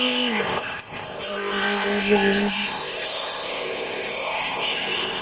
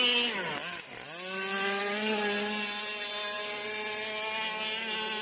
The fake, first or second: first